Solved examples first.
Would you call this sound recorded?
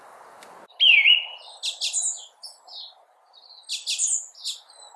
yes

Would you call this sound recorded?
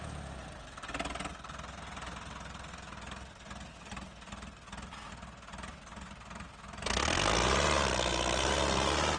yes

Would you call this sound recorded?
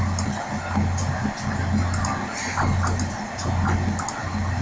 yes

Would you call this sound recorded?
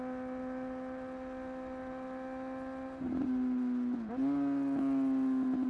yes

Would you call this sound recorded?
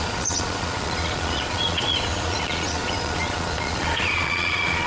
no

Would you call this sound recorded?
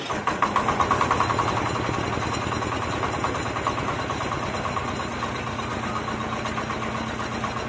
yes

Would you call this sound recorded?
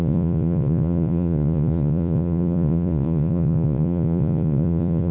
no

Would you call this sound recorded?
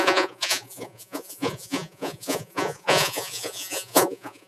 no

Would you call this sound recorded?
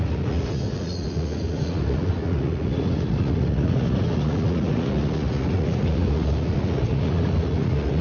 no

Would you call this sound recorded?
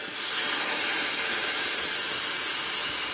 yes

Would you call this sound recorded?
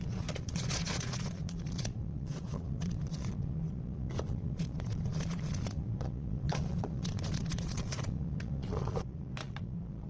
no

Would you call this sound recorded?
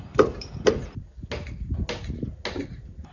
yes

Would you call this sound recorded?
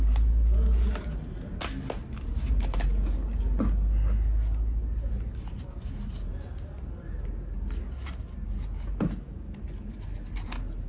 yes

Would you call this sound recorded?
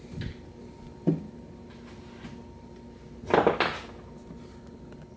yes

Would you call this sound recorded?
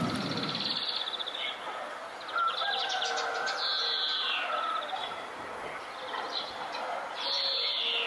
yes